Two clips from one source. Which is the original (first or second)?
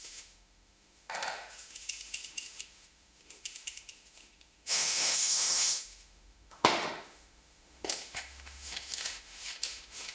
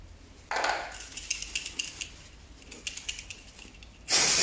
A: second